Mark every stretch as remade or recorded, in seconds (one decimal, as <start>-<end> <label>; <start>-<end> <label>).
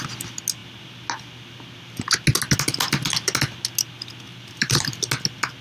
0.0-4.3 recorded; 4.3-5.0 remade; 5.0-5.6 recorded